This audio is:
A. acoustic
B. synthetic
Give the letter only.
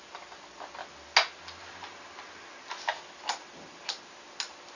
A